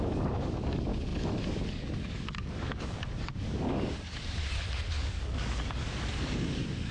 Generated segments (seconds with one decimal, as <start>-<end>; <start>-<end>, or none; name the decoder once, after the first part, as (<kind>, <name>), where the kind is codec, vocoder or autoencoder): 0.0-4.4 (codec, DAC); 5.0-6.9